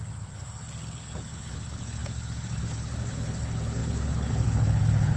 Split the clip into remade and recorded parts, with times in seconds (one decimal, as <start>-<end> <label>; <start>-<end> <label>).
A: 0.0-5.2 remade